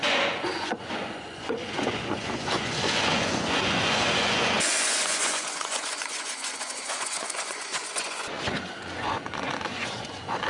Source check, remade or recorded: remade